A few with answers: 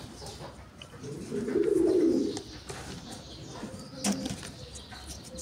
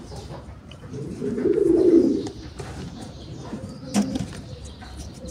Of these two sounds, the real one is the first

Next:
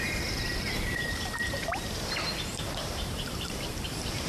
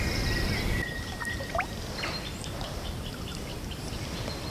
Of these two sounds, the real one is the second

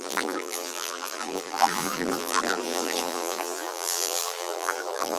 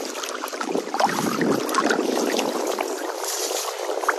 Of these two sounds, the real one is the second